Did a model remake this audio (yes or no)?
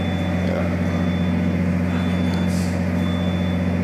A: no